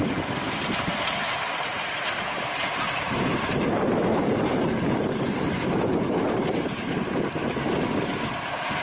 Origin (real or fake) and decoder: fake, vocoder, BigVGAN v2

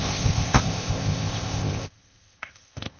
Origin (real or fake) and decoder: fake, codec, ZipCodec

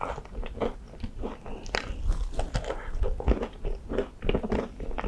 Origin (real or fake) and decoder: real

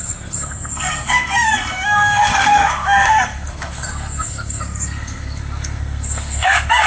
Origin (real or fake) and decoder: fake, codec, SNAC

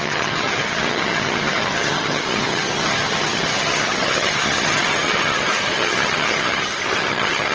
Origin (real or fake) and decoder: fake, vocoder, HiFi-GAN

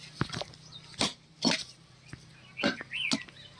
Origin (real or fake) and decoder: real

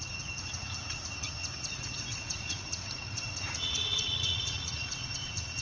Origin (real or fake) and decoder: fake, vocoder, Vocos